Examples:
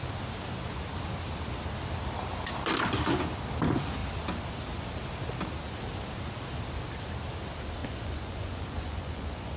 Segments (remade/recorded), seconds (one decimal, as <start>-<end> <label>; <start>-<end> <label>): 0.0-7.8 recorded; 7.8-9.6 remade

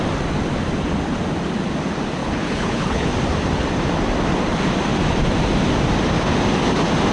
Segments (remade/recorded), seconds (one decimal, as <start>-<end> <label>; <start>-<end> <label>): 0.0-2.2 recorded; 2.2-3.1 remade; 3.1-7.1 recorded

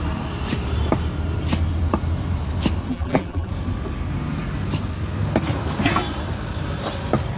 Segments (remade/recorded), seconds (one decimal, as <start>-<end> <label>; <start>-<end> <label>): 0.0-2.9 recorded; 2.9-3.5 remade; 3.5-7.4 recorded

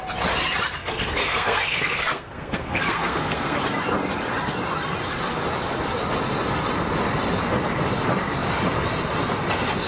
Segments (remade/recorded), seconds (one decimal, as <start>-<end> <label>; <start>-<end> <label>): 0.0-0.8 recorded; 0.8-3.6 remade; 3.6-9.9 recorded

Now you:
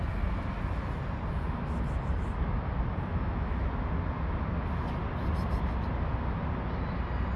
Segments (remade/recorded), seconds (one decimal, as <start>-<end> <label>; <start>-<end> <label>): 0.0-3.1 recorded; 3.1-3.7 remade; 3.7-7.4 recorded

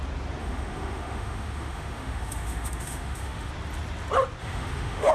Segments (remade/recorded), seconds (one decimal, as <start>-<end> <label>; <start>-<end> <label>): 0.0-0.4 recorded; 0.4-3.5 remade; 3.5-4.4 recorded; 4.4-5.1 remade

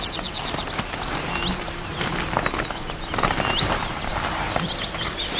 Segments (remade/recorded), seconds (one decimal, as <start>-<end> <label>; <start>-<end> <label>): 0.0-1.9 recorded; 1.9-2.5 remade; 2.5-4.1 recorded; 4.1-5.4 remade